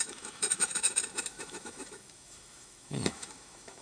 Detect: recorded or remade remade